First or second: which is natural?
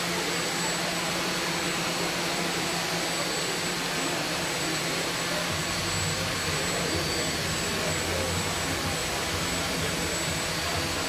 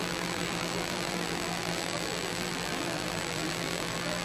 first